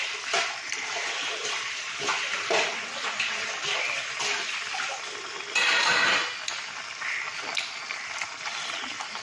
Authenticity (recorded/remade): recorded